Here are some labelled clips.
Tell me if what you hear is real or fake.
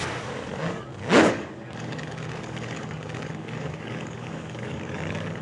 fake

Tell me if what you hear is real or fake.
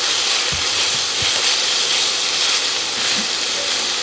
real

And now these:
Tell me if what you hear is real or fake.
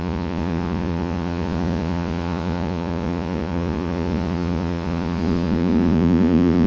fake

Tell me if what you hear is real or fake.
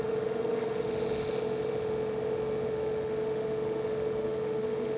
fake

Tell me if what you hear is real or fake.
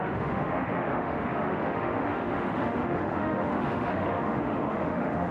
fake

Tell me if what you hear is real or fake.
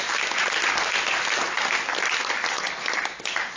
real